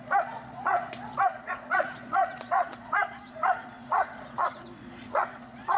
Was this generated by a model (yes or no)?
yes